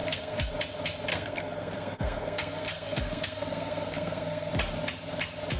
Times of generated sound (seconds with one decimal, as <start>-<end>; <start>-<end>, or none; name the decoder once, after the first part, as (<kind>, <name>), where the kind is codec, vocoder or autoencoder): 0.0-0.5 (codec, SNAC); 1.1-4.5

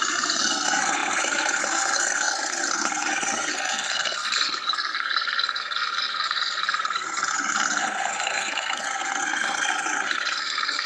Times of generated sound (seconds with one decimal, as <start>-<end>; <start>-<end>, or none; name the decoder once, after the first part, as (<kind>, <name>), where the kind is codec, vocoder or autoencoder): 0.0-10.9 (codec, SNAC)

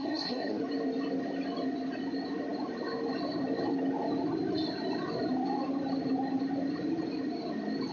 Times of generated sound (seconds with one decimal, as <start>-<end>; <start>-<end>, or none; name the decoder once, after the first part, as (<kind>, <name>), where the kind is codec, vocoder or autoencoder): 0.0-0.6 (codec, SNAC)

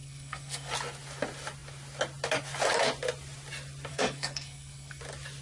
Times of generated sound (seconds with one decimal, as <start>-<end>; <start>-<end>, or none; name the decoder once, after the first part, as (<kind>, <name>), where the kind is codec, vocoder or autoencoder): 0.0-0.7 (codec, SNAC); 3.9-5.0